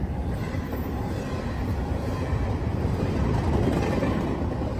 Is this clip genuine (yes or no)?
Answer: yes